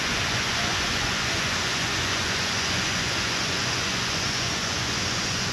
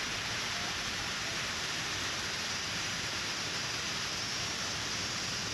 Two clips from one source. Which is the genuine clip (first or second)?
second